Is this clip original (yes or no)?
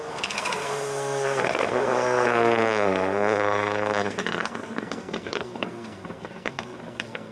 no